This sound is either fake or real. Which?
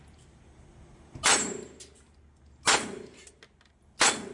real